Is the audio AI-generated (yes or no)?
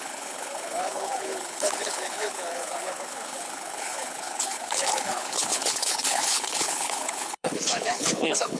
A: yes